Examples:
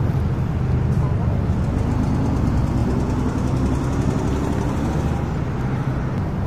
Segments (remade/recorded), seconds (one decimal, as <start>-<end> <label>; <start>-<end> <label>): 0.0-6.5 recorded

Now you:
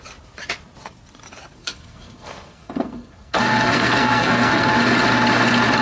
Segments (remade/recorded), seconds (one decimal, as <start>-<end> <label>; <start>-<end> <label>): 0.0-1.6 recorded; 1.6-4.7 remade; 4.7-5.8 recorded

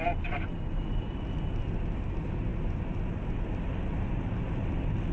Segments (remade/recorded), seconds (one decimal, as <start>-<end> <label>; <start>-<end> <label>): 0.0-5.1 recorded

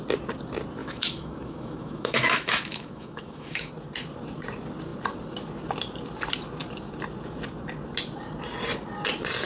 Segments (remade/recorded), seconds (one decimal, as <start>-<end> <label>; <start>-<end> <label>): 0.0-0.8 recorded; 0.8-3.7 remade; 3.7-9.4 recorded

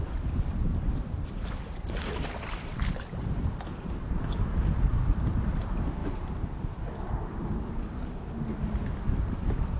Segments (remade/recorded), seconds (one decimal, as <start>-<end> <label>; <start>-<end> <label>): 0.0-0.7 recorded; 0.7-2.9 remade; 2.9-3.7 recorded; 3.7-4.4 remade; 4.4-6.0 recorded; 6.0-7.8 remade; 7.8-9.8 recorded

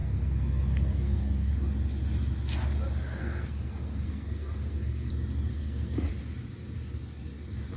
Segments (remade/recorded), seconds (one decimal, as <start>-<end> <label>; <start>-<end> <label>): 0.0-1.5 remade; 1.5-3.2 recorded; 3.2-5.1 remade; 5.1-5.5 recorded; 5.5-6.1 remade; 6.1-7.8 recorded

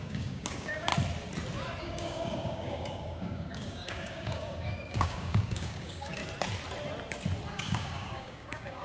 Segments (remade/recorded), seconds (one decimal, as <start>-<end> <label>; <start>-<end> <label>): 0.0-0.9 remade; 0.9-1.8 recorded; 1.8-6.2 remade; 6.2-7.5 recorded; 7.5-8.8 remade